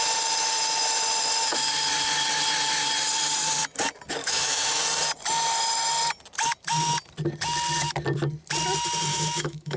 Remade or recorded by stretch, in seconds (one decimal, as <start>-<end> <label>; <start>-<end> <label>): 0.0-4.2 recorded; 4.2-4.8 remade; 4.8-9.1 recorded; 9.1-9.8 remade

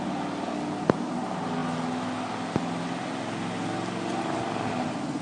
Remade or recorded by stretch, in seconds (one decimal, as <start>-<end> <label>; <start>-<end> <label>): 0.0-5.2 recorded

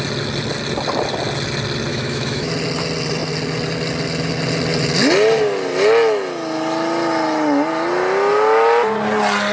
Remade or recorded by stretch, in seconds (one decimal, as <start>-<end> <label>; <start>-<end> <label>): 0.0-1.9 recorded; 1.9-2.5 remade; 2.5-9.5 recorded

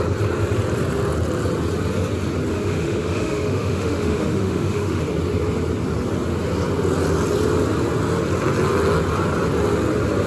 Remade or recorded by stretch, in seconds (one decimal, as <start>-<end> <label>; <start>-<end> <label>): 0.0-2.5 recorded; 2.5-5.0 remade; 5.0-10.3 recorded